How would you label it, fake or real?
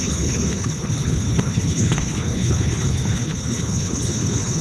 fake